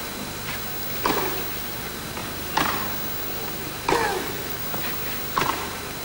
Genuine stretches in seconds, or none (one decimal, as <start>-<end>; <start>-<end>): 0.0-4.1; 4.6-6.0